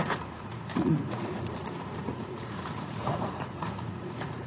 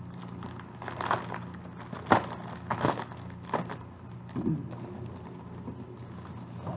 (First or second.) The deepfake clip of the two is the first